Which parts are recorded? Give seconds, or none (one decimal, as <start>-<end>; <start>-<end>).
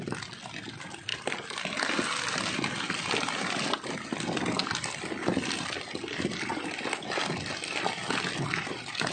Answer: 0.0-9.1